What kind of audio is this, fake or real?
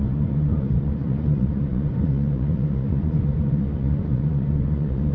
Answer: fake